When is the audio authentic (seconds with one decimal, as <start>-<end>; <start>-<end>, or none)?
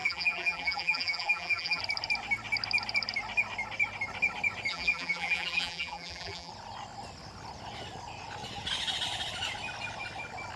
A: 1.8-4.7; 6.5-10.6